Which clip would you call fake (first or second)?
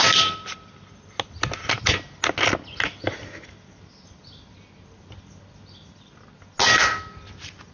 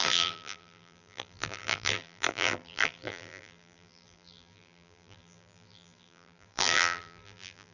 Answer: second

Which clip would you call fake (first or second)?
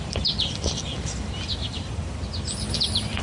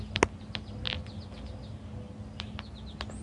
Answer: first